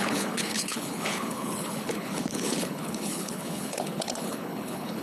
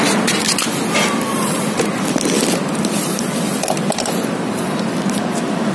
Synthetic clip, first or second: first